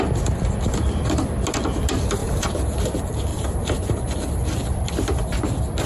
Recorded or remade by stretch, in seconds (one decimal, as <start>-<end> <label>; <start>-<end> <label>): 0.0-2.2 recorded; 2.2-2.8 remade; 2.8-3.3 recorded; 3.3-4.3 remade; 4.3-5.9 recorded